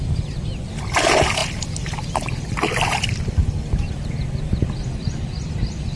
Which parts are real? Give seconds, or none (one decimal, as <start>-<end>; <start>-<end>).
0.0-6.0